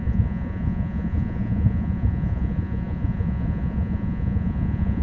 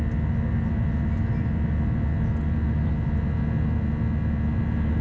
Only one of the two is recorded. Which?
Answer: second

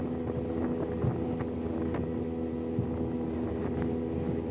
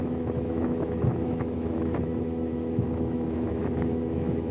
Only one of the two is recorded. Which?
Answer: first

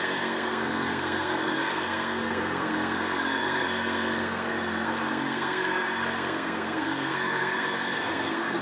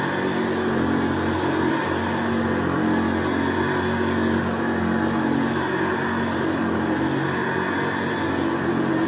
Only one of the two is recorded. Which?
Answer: second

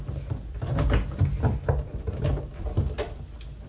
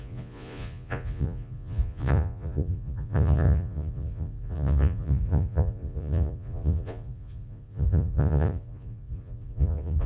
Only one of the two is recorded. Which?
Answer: first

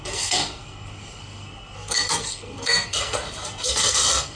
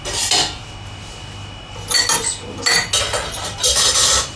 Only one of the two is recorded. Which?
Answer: second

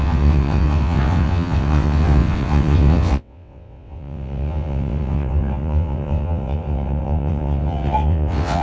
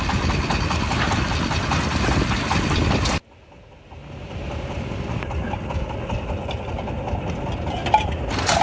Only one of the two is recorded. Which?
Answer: second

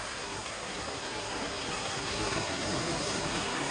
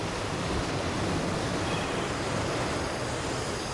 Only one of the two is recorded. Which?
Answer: second